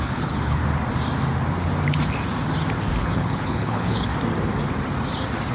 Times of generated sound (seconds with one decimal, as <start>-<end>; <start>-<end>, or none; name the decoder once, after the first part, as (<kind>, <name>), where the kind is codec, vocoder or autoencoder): 0.0-0.6 (codec, HILCodec); 3.0-4.1